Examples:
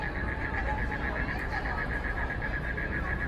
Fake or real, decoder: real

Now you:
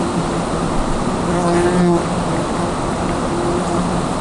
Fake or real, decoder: real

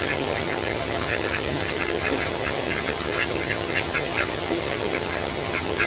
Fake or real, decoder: fake, vocoder, HiFi-GAN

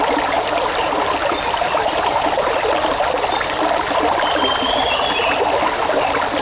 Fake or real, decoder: real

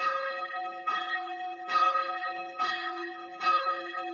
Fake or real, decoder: fake, codec, HILCodec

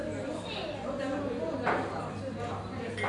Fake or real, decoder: real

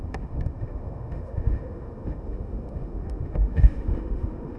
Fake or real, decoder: fake, autoencoder, DAC-VAE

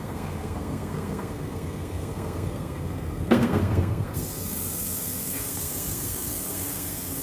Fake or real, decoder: fake, codec, SNAC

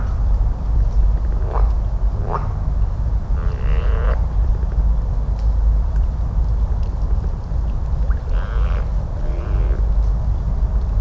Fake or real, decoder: fake, vocoder, BigVGAN v2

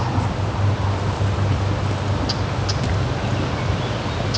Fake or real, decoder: real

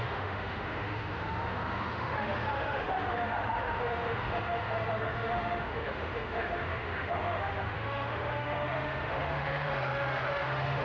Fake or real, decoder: fake, autoencoder, DAC-VAE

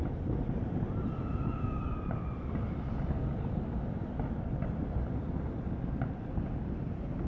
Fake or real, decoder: real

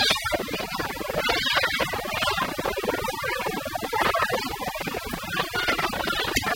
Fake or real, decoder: real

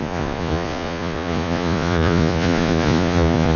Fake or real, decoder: fake, vocoder, Vocos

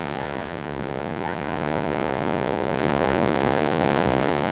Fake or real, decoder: fake, vocoder, Vocos